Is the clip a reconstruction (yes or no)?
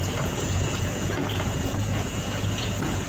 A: yes